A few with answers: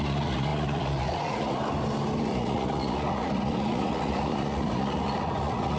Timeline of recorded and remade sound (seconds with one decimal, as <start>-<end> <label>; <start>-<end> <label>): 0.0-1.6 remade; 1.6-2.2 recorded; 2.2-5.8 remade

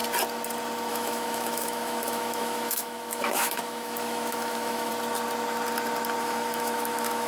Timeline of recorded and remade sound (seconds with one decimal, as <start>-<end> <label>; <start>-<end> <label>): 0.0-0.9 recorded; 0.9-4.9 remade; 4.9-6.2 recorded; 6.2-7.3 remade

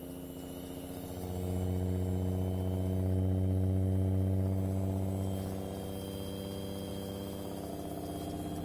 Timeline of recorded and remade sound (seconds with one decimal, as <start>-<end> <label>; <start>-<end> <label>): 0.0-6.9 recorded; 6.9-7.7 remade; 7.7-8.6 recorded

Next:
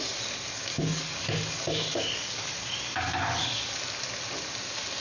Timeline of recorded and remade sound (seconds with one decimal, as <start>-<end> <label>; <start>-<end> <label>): 0.0-0.7 recorded; 0.7-3.7 remade; 3.7-5.0 recorded